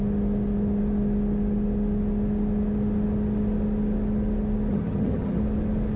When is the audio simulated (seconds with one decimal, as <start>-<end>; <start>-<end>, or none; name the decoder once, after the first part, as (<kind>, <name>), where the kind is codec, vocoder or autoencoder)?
4.7-5.4 (vocoder, HiFi-GAN)